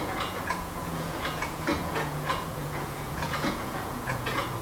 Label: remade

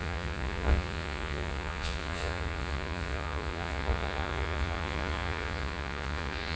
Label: remade